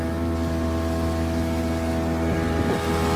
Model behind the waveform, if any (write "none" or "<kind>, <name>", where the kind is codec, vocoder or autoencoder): none